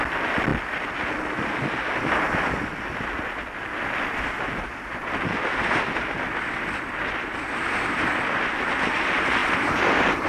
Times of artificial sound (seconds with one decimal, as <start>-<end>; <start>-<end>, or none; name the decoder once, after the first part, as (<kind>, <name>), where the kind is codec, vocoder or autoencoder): none